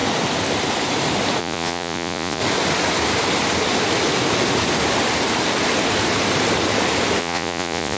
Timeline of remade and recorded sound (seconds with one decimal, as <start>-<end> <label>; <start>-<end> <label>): 0.0-1.4 recorded; 1.4-2.4 remade; 2.4-7.2 recorded; 7.2-8.0 remade